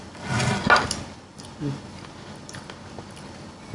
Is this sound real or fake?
real